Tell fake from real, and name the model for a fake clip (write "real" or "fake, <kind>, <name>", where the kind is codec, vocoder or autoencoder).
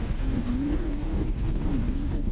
fake, codec, DAC